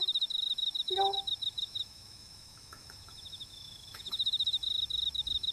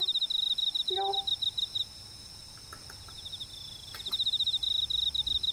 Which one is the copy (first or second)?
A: first